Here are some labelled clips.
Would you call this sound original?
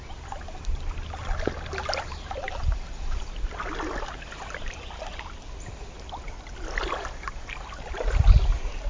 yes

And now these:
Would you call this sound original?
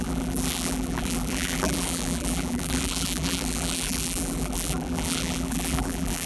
no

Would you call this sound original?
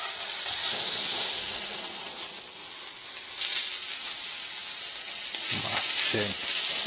yes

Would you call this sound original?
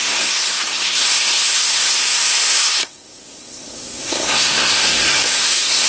no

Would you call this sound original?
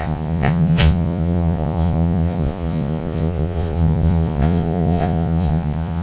no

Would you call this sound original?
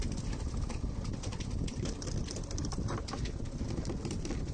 yes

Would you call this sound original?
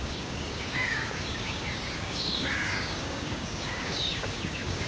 no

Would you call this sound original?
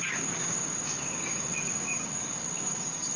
no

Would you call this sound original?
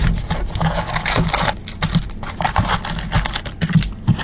yes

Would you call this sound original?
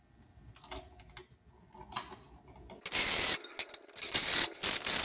yes